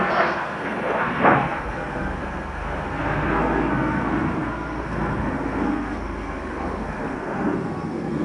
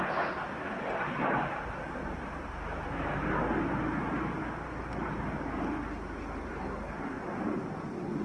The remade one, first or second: first